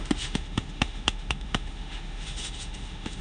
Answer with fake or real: fake